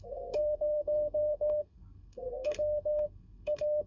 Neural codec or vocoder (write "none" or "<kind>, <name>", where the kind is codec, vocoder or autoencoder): codec, SNAC